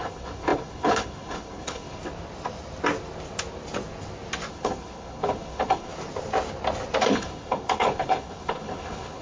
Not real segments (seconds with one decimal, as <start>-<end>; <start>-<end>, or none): 0.0-2.0; 4.5-5.9; 7.1-9.2